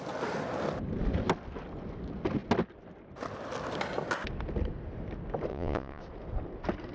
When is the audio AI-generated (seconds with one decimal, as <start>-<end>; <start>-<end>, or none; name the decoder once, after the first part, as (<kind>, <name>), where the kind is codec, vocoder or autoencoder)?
5.5-6.0 (vocoder, Vocos)